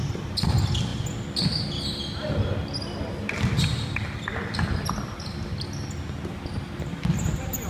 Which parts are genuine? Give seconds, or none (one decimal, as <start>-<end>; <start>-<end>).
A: 0.0-7.7